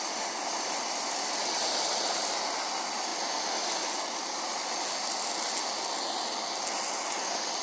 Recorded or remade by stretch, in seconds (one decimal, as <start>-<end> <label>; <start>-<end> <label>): 0.0-7.6 recorded